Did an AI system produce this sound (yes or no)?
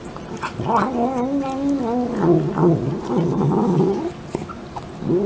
no